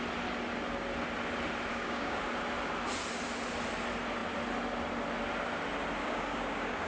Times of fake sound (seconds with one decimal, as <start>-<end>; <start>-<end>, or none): 1.7-2.2; 6.0-6.9